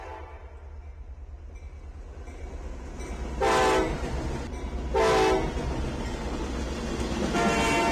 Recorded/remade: recorded